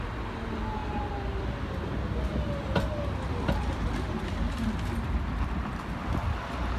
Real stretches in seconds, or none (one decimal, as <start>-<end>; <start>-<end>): 0.0-6.8